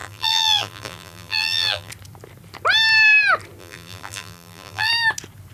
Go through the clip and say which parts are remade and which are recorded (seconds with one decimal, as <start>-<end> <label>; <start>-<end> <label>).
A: 0.0-1.9 remade; 1.9-3.6 recorded; 3.6-4.9 remade; 4.9-5.5 recorded